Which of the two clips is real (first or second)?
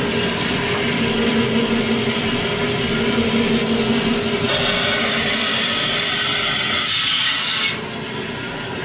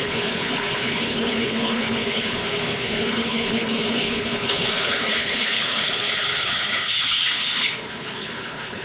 first